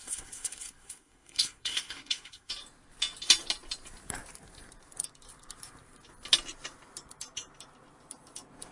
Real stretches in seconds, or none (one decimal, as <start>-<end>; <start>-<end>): 2.5-8.7